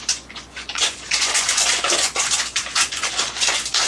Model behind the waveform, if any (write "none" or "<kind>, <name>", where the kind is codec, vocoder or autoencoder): vocoder, Vocos